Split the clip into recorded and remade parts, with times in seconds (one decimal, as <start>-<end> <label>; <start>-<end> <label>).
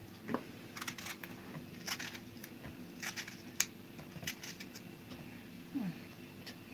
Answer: 0.0-6.7 recorded